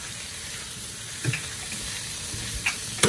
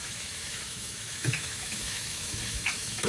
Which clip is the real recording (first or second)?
first